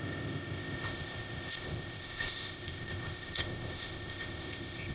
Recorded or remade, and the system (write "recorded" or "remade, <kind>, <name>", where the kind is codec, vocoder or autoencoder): remade, codec, ZipCodec